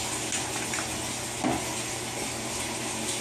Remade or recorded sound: recorded